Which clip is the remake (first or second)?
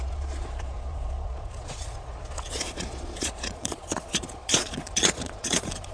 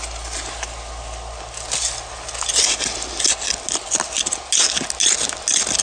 first